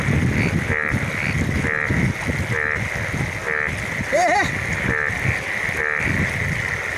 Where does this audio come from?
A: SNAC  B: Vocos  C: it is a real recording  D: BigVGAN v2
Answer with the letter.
C